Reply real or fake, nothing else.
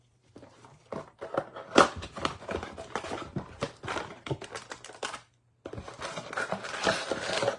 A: fake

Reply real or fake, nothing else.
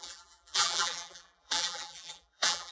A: fake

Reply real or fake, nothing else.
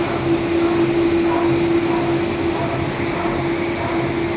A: real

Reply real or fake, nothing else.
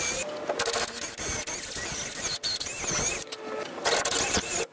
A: real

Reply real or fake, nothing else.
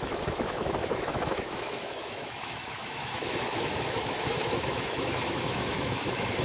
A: fake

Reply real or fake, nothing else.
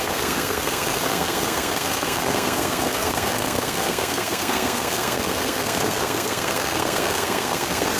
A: fake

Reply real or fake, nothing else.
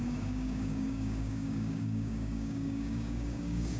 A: fake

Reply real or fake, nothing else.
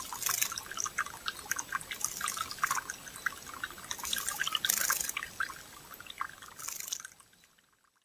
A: real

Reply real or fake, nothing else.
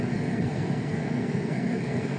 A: fake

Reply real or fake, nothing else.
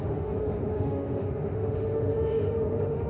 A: fake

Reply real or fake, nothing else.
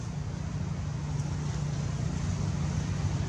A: real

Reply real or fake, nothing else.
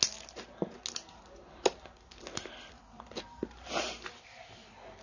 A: real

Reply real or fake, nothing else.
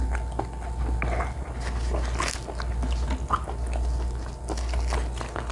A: real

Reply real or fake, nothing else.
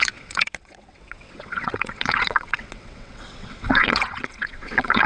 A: fake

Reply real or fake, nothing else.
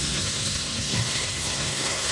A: fake